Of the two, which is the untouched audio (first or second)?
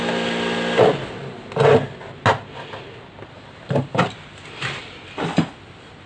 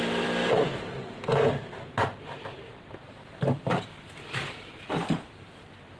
first